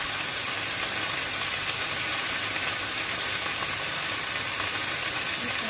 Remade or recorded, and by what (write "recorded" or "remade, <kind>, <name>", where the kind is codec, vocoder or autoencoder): recorded